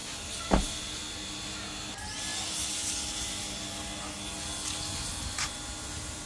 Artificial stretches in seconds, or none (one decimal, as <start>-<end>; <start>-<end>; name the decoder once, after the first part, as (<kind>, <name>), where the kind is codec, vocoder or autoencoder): none